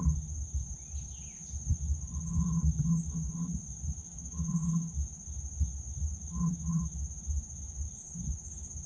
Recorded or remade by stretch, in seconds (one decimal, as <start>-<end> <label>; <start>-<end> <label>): 0.0-4.0 recorded; 4.0-4.5 remade; 4.5-8.9 recorded